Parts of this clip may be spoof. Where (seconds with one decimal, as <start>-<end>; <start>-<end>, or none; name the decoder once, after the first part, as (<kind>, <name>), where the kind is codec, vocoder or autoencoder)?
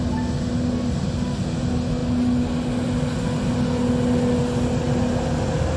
none